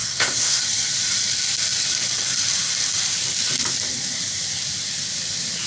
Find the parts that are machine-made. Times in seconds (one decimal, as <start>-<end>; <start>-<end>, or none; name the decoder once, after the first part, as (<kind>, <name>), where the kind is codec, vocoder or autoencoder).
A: 0.0-0.6 (codec, SNAC)